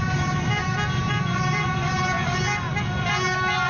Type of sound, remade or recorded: recorded